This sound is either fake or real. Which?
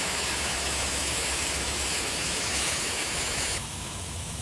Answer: fake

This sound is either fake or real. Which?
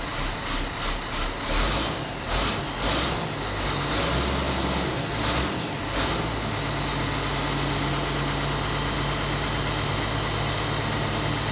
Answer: real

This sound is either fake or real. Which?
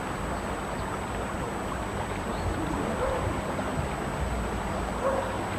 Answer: real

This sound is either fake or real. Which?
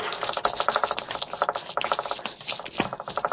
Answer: real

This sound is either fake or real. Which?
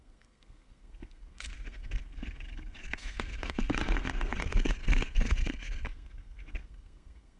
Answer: fake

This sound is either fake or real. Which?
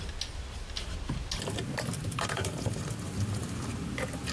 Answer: real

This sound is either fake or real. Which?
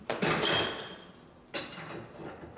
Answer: real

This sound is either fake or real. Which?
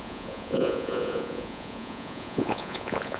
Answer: fake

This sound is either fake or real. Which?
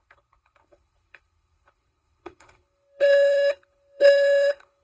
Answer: fake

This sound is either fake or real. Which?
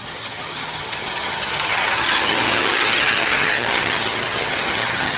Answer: fake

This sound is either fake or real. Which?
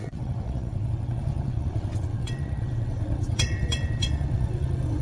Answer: fake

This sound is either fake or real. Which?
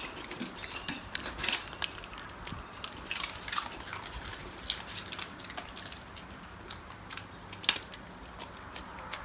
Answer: real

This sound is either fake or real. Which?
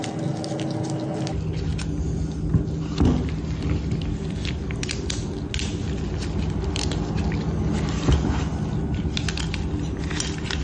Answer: real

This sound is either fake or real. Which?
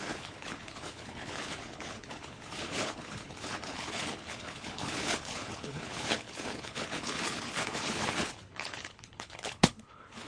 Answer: fake